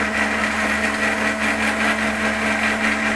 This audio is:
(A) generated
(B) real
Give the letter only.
B